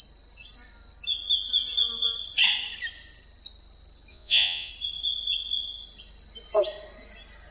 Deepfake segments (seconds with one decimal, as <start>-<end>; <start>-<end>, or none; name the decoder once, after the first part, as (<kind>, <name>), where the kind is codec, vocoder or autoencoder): 4.1-4.7 (vocoder, Vocos)